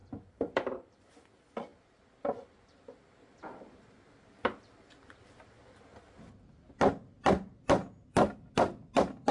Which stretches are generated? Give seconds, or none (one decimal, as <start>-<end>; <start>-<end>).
0.0-1.0; 1.7-5.6